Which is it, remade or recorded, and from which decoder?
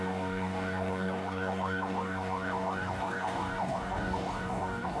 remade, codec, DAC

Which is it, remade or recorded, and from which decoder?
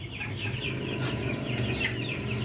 recorded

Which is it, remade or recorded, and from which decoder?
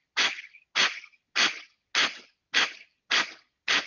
recorded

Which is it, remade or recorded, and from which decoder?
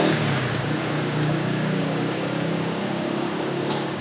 remade, codec, DAC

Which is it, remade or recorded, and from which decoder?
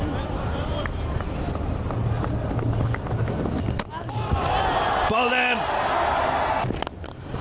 recorded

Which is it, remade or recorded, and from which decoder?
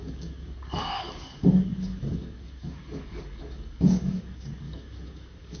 remade, codec, DAC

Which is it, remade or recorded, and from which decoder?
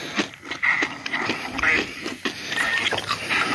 recorded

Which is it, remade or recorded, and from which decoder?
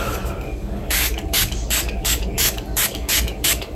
remade, codec, DAC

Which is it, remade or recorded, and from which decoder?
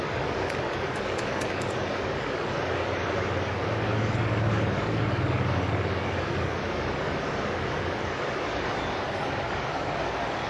remade, codec, DAC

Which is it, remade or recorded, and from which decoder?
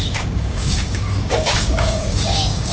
remade, codec, DAC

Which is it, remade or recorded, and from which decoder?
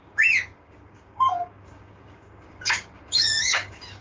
remade, codec, DAC